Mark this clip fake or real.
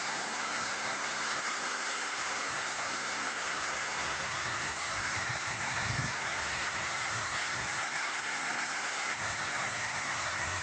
fake